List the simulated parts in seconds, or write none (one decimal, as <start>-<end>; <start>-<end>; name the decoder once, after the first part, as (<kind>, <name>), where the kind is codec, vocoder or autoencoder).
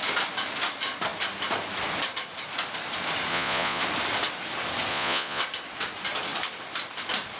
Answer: 3.3-3.8 (vocoder, Vocos); 4.9-5.4